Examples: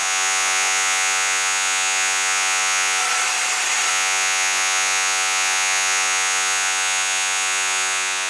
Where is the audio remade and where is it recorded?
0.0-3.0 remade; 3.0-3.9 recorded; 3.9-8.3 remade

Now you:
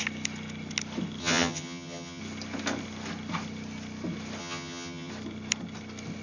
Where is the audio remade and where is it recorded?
0.0-1.2 recorded; 1.2-2.2 remade; 2.2-4.4 recorded; 4.4-5.1 remade; 5.1-6.2 recorded

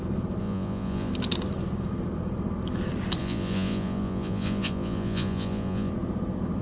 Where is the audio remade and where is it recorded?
0.0-0.4 recorded; 0.4-1.1 remade; 1.1-3.2 recorded; 3.2-5.9 remade; 5.9-6.6 recorded

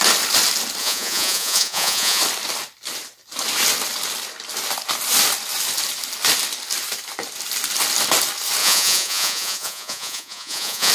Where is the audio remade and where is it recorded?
0.0-0.8 recorded; 0.8-2.2 remade; 2.2-8.6 recorded; 8.6-10.9 remade